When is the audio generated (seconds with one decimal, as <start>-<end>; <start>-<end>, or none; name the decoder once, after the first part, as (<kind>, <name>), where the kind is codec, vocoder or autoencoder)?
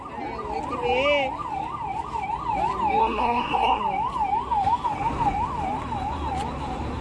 3.0-3.8 (codec, SNAC)